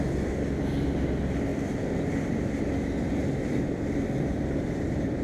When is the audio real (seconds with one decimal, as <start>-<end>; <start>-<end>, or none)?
1.5-4.6

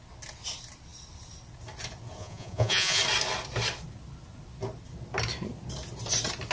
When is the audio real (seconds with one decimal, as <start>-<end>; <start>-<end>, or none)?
0.0-2.2; 3.0-6.5

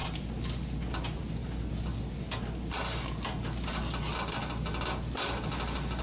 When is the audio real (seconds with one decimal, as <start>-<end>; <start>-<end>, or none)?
0.0-6.0

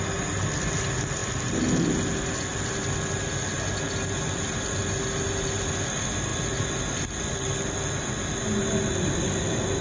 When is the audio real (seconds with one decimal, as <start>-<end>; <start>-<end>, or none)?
0.0-9.8

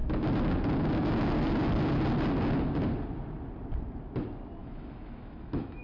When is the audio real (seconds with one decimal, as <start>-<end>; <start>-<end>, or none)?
0.0-4.6

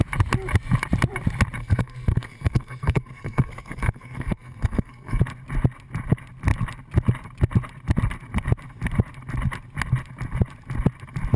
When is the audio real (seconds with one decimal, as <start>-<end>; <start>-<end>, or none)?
0.0-1.6; 5.2-11.4